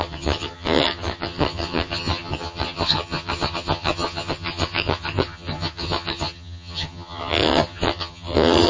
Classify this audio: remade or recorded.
remade